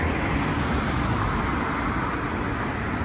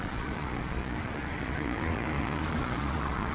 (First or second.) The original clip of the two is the first